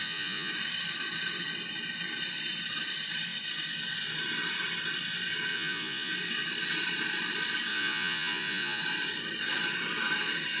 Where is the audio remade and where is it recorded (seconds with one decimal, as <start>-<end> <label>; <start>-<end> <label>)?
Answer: 0.0-0.5 remade; 0.5-5.5 recorded; 5.5-6.1 remade; 6.1-7.7 recorded; 7.7-8.8 remade; 8.8-10.6 recorded